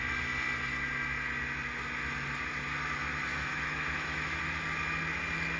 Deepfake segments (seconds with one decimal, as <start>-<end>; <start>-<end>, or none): 3.3-4.4